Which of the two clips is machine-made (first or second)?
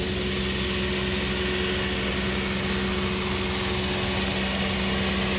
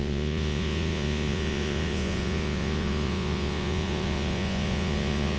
second